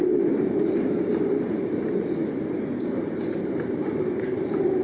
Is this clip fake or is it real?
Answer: fake